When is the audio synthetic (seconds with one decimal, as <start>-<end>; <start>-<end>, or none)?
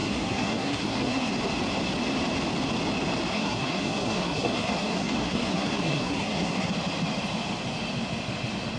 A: 0.0-1.3; 3.3-6.7